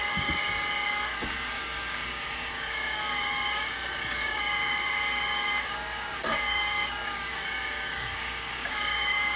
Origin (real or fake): fake